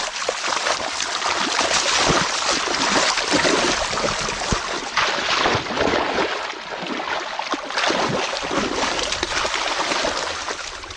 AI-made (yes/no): no